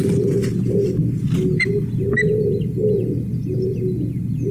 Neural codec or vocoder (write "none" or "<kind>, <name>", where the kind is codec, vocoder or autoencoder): none